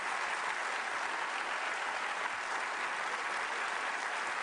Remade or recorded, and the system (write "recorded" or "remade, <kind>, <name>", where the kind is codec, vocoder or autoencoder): recorded